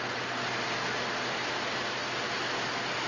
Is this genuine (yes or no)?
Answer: yes